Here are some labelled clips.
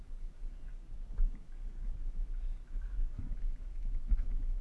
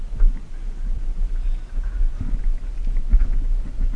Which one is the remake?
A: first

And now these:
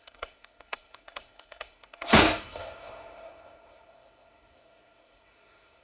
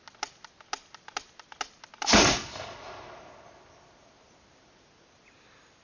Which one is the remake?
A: first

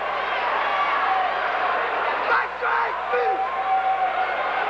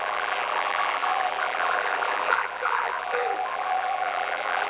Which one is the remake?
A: second